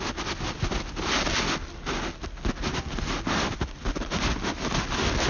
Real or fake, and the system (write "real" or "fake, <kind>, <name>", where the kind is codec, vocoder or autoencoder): real